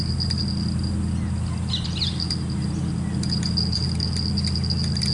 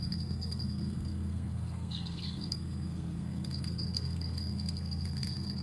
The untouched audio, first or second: first